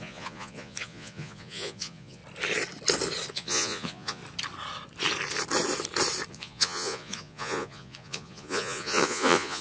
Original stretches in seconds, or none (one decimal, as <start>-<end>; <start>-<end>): 2.2-3.3; 4.2-6.3